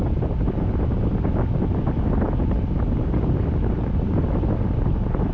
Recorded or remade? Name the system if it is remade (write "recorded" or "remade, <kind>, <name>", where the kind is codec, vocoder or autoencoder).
recorded